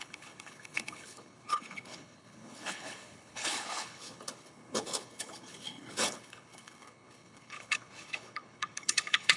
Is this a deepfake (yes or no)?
yes